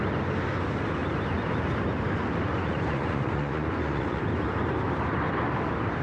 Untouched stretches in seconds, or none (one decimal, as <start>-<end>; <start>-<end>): 0.0-2.5; 4.2-6.0